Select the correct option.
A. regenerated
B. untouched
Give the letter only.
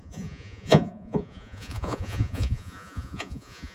A